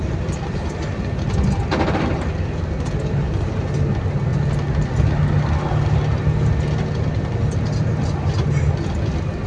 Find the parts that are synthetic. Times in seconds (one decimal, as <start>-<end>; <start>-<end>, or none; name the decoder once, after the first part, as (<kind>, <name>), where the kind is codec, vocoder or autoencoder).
none